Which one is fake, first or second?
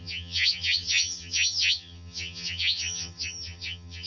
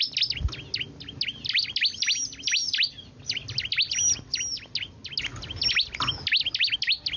first